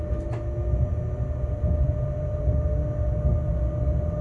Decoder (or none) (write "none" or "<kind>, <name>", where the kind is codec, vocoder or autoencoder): none